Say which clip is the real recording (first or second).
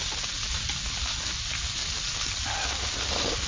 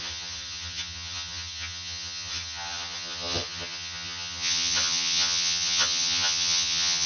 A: first